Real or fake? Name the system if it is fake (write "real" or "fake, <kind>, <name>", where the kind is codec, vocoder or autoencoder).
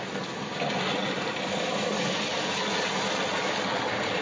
real